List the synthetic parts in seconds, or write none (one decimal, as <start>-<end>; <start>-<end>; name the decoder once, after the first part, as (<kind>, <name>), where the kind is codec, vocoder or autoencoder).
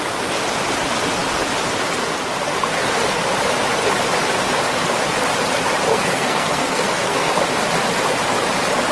5.9-7.3 (codec, SNAC)